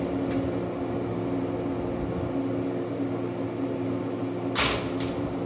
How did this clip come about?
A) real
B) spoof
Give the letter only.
A